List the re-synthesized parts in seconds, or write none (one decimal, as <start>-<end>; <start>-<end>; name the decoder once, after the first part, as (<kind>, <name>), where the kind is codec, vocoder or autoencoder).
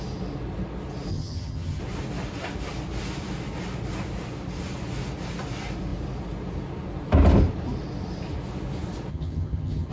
1.1-1.8 (vocoder, HiFi-GAN); 9.1-9.9